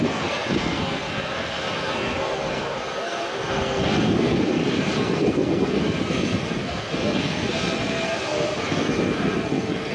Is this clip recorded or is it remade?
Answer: remade